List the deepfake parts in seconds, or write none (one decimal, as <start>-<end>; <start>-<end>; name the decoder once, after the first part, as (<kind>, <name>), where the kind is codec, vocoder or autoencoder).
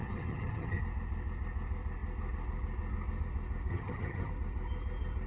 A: 0.0-0.8 (vocoder, HiFi-GAN); 3.7-4.3